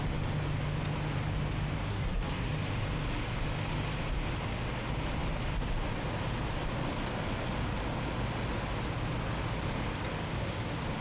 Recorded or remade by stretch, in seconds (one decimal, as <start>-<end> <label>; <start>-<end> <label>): 0.0-1.9 recorded; 1.9-2.5 remade; 2.5-11.0 recorded